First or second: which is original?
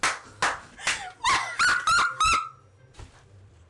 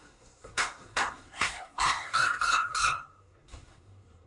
first